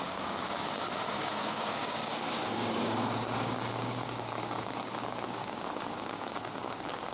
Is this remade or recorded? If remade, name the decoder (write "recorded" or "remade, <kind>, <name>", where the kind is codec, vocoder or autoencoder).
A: remade, codec, DAC